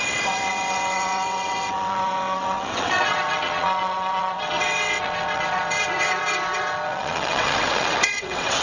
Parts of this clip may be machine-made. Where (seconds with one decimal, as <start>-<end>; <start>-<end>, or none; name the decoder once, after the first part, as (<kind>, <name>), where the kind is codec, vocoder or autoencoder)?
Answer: 0.0-8.6 (vocoder, WaveNeXt)